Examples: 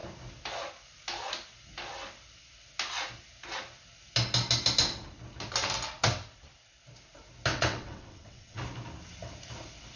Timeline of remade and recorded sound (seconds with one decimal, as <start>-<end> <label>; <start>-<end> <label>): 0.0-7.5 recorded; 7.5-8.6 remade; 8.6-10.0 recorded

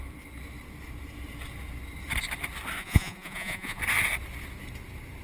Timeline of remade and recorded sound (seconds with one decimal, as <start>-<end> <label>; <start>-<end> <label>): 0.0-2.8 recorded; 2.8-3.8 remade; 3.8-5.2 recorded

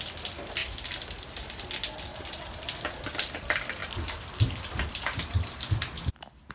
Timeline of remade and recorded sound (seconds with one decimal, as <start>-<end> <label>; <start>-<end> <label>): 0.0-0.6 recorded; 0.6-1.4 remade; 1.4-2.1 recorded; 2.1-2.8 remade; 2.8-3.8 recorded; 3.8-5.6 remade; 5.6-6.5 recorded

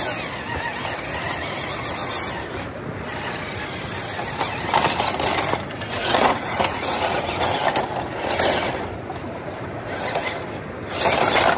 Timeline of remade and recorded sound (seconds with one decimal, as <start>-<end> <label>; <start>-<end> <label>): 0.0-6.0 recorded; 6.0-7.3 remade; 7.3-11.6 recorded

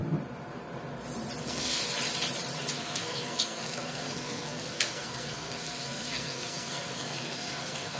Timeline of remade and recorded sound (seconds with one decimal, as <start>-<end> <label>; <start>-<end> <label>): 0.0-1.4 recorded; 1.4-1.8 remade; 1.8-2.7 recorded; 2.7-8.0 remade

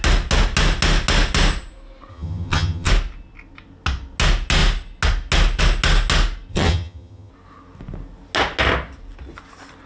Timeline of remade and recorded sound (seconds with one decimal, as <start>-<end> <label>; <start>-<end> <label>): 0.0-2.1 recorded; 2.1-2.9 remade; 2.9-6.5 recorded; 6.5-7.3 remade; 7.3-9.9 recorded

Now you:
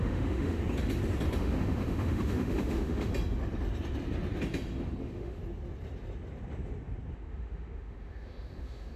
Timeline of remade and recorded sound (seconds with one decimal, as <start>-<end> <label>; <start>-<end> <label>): 0.0-0.6 remade; 0.6-1.4 recorded; 1.4-3.1 remade; 3.1-5.0 recorded; 5.0-5.4 remade; 5.4-7.1 recorded; 7.1-9.0 remade